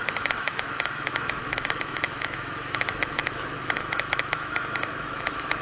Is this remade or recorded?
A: remade